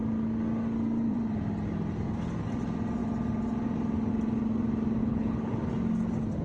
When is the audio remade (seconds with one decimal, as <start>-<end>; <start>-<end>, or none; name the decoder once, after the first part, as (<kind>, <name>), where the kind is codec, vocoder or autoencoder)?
5.0-5.6 (codec, HILCodec)